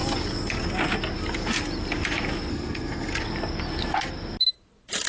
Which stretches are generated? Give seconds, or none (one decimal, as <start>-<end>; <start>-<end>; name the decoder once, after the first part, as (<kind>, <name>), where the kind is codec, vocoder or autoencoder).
2.5-3.1 (codec, SNAC)